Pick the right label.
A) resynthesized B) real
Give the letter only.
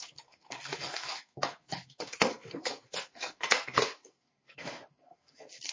A